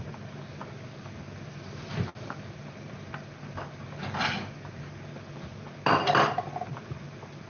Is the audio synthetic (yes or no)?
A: no